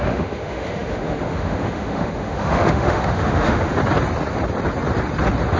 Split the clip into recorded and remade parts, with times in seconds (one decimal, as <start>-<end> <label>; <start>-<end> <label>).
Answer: 0.0-3.8 remade; 3.8-5.6 recorded